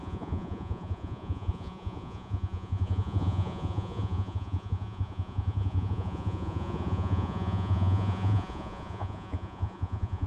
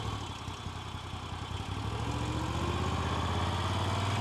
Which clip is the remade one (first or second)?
first